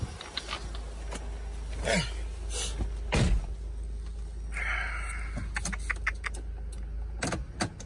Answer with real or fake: real